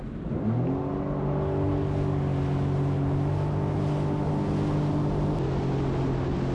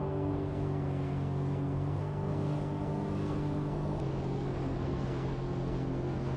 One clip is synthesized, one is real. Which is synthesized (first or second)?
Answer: second